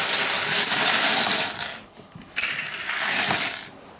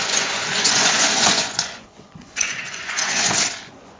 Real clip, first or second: first